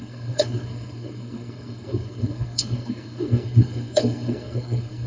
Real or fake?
fake